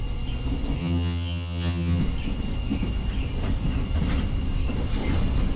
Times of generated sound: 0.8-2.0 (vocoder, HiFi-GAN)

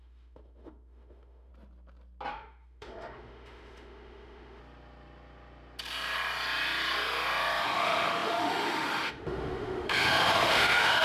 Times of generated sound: 0.0-1.5 (autoencoder, DAC-VAE); 2.3-4.6; 7.6-11.0

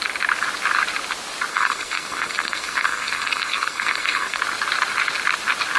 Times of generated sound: 1.5-4.4 (codec, SNAC)

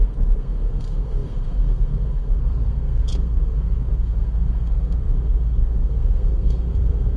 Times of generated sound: 0.0-7.2 (codec, SNAC)